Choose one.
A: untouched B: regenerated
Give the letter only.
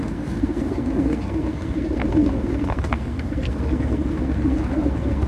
B